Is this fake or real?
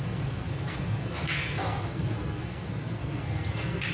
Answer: fake